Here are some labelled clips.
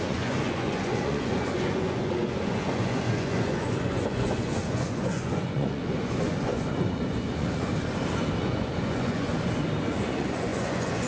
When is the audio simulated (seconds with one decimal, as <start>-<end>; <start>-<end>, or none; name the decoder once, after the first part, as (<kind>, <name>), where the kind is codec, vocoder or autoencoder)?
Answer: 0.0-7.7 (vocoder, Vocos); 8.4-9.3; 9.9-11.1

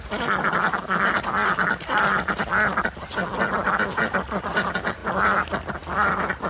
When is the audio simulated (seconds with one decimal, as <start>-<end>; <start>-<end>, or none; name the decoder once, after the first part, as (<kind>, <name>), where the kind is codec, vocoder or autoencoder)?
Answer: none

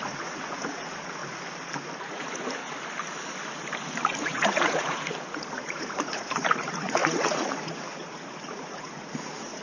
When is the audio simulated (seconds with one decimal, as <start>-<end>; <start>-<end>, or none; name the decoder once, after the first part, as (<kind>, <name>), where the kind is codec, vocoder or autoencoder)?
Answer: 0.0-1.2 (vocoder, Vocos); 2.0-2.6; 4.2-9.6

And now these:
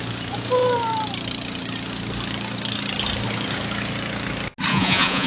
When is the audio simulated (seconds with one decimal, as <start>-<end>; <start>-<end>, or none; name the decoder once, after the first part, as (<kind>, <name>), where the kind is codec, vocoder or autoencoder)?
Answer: 4.7-5.3 (vocoder, Vocos)

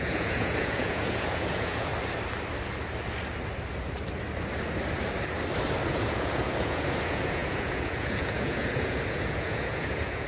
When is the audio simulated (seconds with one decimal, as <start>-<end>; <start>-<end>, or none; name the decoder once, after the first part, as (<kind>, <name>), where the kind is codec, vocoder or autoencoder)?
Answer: 0.0-1.9 (vocoder, Vocos); 5.9-10.3

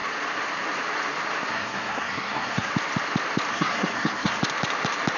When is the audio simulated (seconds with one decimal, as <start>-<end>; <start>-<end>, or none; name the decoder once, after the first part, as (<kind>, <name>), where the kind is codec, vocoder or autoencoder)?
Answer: 1.5-2.7 (codec, SNAC); 3.5-4.4